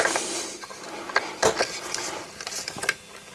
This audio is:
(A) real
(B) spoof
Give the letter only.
A